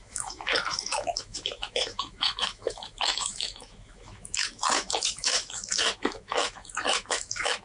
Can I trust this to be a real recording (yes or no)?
no